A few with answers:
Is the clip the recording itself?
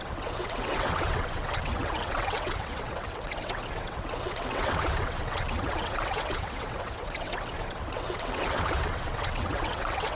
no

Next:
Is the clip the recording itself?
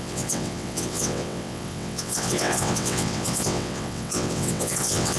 no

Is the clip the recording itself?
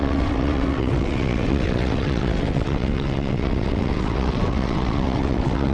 no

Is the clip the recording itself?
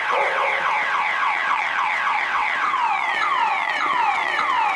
no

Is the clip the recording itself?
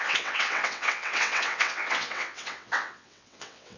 no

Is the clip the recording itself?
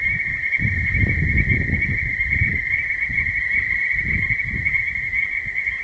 yes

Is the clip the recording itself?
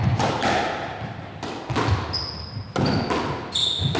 yes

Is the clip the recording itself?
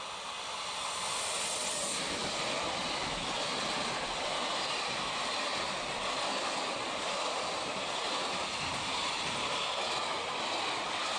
yes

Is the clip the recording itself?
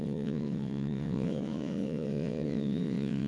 no